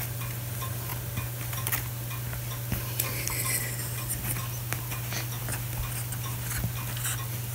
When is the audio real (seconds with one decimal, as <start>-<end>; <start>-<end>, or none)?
0.0-7.5